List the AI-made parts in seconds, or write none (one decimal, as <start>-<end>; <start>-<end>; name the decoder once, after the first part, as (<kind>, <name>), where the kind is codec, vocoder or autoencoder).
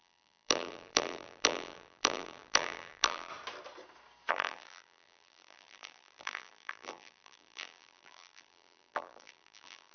0.0-3.3 (vocoder, BigVGAN v2); 4.3-9.9